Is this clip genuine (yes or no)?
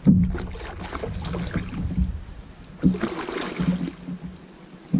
yes